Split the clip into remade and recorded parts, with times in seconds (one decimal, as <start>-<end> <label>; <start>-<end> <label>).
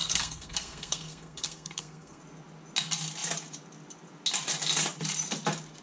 0.0-2.2 remade; 2.2-5.8 recorded